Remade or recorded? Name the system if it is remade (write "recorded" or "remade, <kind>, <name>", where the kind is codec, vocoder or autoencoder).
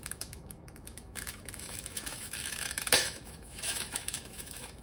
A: remade, autoencoder, DAC-VAE